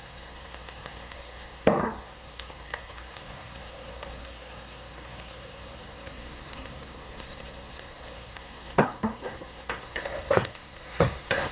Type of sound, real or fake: fake